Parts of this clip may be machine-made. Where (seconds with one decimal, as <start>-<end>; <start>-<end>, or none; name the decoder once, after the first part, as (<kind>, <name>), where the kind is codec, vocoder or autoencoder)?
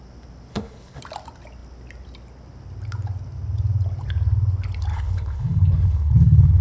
0.5-1.0 (codec, HILCodec); 4.9-6.6